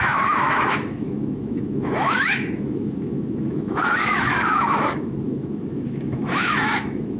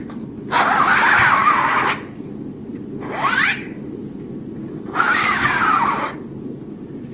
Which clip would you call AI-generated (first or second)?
first